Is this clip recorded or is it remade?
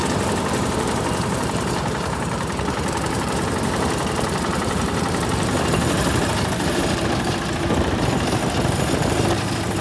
remade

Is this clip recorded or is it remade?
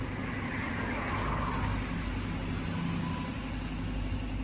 recorded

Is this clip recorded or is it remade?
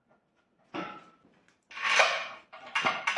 recorded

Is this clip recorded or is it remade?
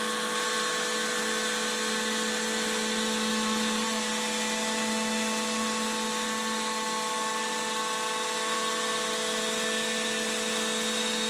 recorded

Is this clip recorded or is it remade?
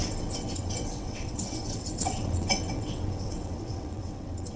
remade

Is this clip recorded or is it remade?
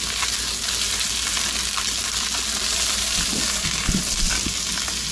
recorded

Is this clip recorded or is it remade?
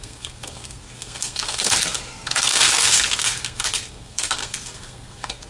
remade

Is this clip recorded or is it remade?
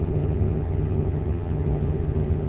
remade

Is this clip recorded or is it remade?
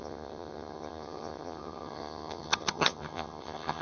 remade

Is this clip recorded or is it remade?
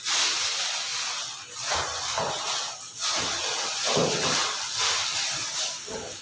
recorded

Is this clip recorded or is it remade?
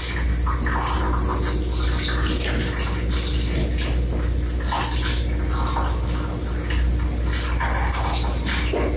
recorded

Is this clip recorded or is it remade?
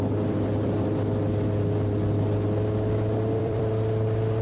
remade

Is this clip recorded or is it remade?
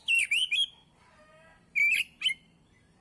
recorded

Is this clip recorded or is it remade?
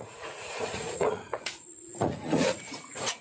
remade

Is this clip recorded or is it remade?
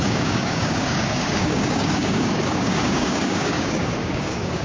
remade